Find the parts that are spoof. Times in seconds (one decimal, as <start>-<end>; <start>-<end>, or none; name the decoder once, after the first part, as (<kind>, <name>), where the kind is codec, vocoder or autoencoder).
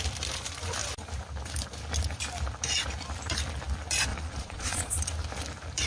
4.1-5.0 (vocoder, Vocos)